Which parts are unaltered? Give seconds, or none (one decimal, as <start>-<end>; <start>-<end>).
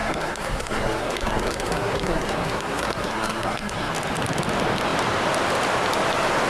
3.9-6.5